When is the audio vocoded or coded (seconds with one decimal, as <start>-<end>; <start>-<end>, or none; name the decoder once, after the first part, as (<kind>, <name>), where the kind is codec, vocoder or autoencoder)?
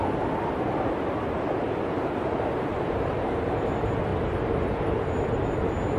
2.7-3.5 (vocoder, BigVGAN v2); 4.1-5.0